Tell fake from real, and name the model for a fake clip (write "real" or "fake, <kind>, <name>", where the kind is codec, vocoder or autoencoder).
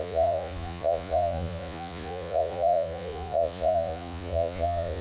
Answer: fake, vocoder, Vocos